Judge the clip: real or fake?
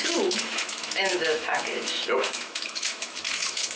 fake